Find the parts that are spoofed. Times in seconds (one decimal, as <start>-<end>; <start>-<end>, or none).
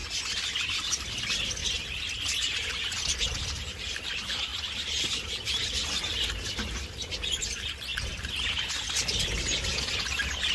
0.0-10.5